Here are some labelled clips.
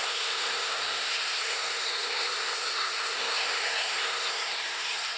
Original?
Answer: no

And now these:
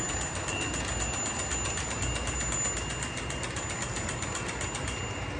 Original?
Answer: yes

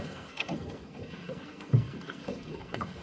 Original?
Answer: no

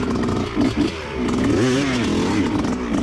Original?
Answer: yes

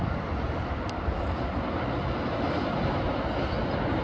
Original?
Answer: yes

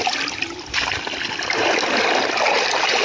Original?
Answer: yes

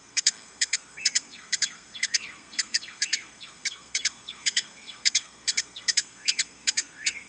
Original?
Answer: no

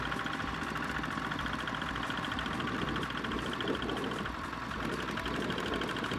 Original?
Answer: yes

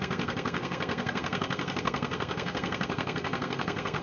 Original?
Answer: no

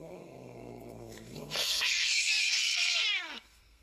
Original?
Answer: no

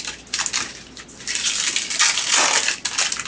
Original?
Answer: yes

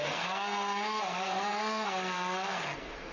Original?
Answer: no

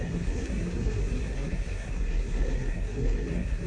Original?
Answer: no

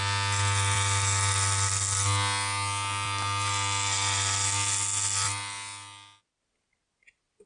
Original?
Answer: yes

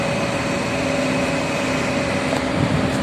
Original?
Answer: yes